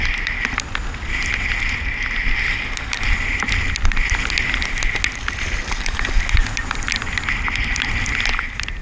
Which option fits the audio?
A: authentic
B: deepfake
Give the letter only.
A